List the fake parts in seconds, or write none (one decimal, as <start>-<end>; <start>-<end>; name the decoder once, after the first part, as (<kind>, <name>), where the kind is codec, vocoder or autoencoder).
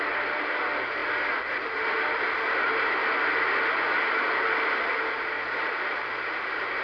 none